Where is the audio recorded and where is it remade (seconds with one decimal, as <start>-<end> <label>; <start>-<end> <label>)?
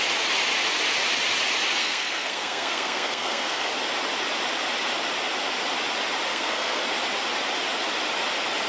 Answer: 0.0-1.8 recorded; 1.8-3.7 remade; 3.7-6.3 recorded; 6.3-6.8 remade; 6.8-8.7 recorded